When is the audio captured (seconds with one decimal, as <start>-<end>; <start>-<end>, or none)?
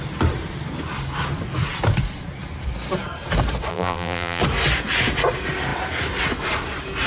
0.0-3.7; 4.4-7.1